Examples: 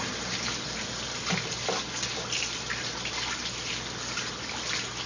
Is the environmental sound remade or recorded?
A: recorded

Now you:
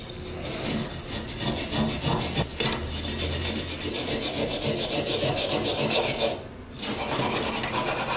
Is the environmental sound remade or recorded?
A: recorded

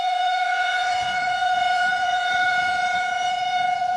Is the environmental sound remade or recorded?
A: remade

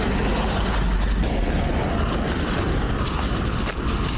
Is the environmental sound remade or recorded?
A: recorded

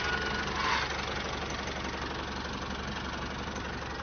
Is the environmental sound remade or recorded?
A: recorded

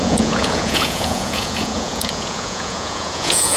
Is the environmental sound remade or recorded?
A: remade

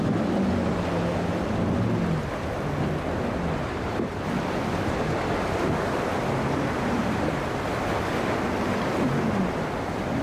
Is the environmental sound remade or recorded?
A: recorded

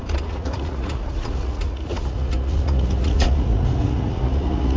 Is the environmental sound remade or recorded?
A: remade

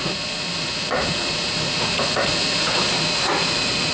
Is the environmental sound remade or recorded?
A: remade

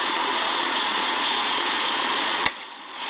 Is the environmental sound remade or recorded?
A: remade